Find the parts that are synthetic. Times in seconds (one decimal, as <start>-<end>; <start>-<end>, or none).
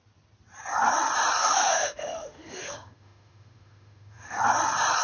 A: 1.4-4.4